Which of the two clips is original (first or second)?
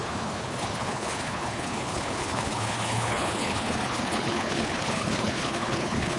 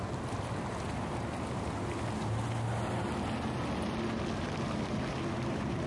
second